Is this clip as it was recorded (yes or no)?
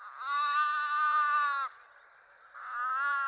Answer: no